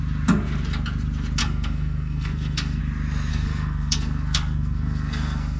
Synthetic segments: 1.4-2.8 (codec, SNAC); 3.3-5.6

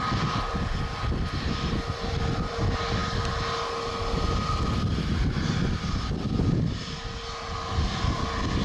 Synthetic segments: none

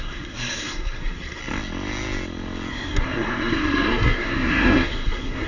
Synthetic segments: 0.0-1.4 (codec, SNAC); 2.7-5.5